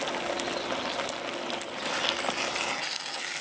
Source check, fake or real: real